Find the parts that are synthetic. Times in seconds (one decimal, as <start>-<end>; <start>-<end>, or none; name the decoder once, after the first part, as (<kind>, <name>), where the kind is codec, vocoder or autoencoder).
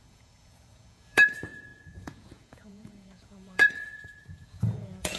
0.0-5.2 (vocoder, Vocos)